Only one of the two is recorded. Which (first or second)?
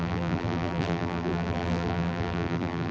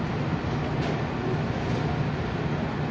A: second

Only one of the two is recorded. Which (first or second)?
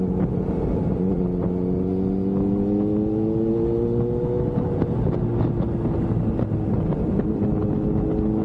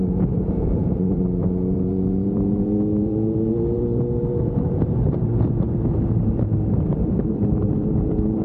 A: first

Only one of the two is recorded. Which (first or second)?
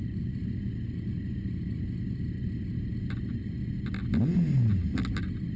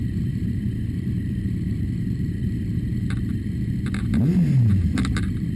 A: first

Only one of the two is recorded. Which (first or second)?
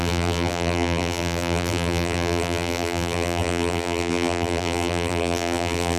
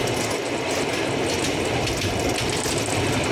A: second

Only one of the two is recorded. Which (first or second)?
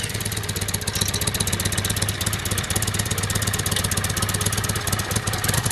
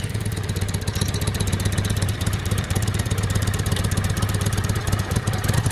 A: first